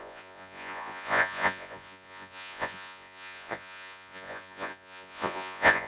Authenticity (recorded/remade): remade